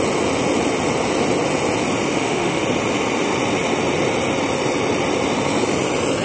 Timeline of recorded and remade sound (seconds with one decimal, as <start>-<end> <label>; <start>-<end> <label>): 0.0-2.1 recorded; 2.1-2.6 remade; 2.6-6.2 recorded